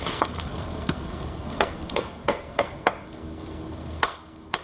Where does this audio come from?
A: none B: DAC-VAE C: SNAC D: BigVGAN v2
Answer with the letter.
C